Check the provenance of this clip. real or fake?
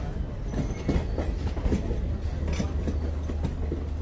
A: real